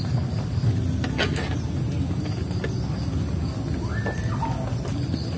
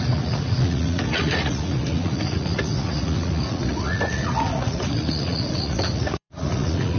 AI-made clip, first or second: second